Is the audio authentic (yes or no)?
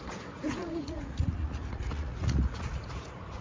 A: no